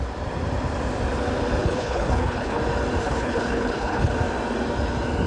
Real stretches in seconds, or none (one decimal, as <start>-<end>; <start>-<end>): 0.0-1.6; 2.6-3.0; 4.1-5.3